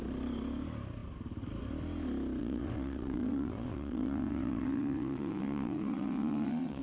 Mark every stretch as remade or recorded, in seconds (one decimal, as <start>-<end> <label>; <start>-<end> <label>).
0.0-2.4 recorded; 2.4-6.8 remade